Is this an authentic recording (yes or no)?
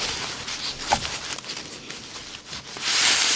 yes